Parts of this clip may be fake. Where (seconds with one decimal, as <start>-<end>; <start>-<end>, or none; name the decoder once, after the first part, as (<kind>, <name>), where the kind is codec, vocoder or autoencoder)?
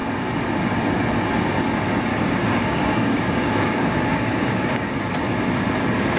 2.1-5.1 (codec, DAC)